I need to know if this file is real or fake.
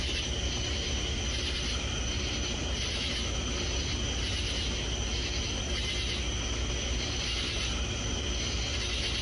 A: real